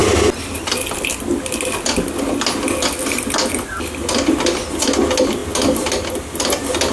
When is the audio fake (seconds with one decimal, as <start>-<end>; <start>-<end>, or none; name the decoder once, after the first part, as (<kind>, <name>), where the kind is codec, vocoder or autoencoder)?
none